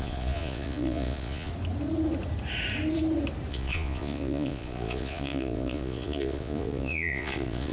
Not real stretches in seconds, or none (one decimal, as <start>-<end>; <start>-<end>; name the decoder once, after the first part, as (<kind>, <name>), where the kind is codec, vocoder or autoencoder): 0.0-1.5 (vocoder, Vocos); 3.5-7.7